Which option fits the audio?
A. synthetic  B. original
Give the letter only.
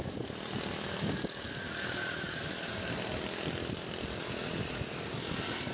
B